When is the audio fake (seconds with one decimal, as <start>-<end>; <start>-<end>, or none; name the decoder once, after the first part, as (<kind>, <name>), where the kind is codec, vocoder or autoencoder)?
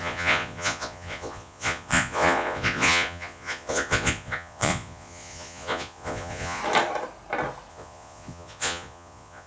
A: 0.0-6.6 (vocoder, Vocos); 7.7-9.5